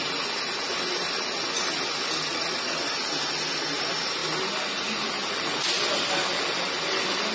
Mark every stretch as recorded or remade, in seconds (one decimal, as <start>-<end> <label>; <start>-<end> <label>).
0.0-2.3 recorded; 2.3-2.8 remade; 2.8-7.3 recorded